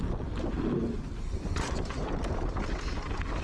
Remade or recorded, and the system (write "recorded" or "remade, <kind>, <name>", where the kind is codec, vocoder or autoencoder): recorded